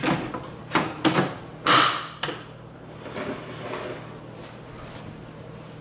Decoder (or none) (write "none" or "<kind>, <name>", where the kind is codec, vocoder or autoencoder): none